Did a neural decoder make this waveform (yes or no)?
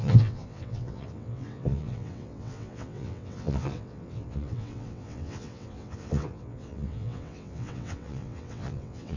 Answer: yes